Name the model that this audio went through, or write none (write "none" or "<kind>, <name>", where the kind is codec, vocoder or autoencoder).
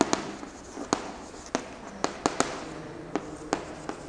none